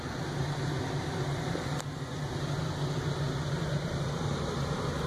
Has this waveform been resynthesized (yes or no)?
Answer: no